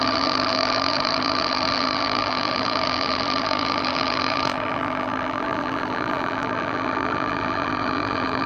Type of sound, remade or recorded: remade